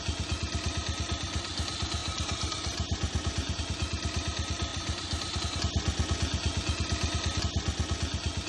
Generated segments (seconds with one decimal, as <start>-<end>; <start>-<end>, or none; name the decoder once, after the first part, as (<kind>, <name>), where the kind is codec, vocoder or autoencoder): 2.0-3.6 (vocoder, BigVGAN v2); 4.7-5.4